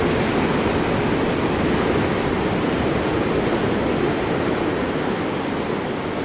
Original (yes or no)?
yes